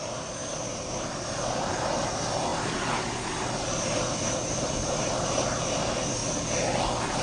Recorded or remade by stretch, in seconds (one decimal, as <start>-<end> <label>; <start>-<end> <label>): 0.0-0.4 remade; 0.4-1.2 recorded; 1.2-6.2 remade; 6.2-7.2 recorded